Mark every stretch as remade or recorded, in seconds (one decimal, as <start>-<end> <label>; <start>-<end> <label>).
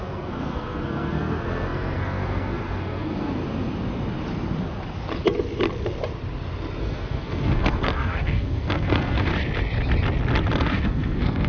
0.0-3.4 remade; 3.4-6.8 recorded; 6.8-9.3 remade; 9.3-10.7 recorded; 10.7-11.5 remade